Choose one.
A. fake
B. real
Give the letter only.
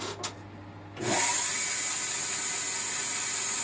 B